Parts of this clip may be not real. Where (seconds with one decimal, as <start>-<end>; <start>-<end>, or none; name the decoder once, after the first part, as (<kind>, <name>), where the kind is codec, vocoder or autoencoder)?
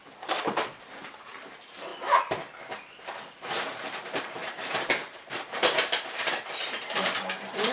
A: 0.0-1.9 (vocoder, BigVGAN v2); 3.4-7.7